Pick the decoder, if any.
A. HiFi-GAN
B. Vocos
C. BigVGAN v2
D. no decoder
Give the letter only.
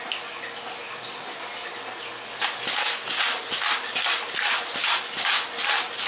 D